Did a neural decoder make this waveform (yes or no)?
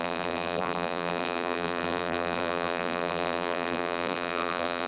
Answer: yes